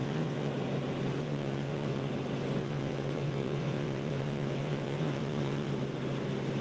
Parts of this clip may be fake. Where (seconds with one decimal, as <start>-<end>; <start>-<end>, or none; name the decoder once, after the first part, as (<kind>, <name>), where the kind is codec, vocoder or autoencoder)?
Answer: 0.0-0.5 (vocoder, WaveNeXt); 1.2-2.1; 2.6-5.7